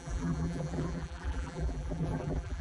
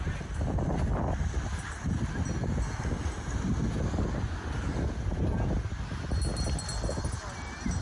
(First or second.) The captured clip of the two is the second